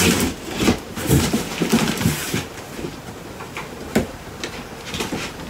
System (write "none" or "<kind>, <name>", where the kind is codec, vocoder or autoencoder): none